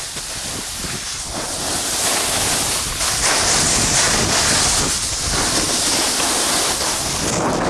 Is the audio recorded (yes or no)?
yes